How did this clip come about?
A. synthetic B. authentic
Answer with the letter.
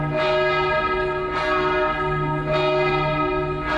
B